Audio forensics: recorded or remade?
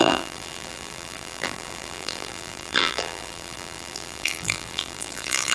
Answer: remade